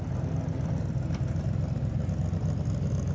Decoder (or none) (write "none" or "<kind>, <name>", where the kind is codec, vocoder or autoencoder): none